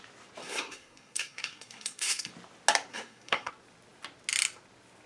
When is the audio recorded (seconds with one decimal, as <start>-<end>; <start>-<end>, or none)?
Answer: 0.0-0.4; 2.3-2.9; 3.5-5.1